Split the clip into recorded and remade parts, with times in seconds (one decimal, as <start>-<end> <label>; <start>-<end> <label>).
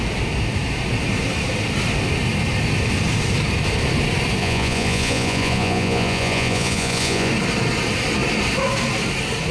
0.0-4.4 recorded; 4.4-7.3 remade; 7.3-9.5 recorded